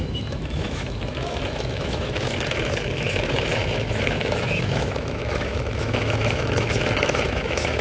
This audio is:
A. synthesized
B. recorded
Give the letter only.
A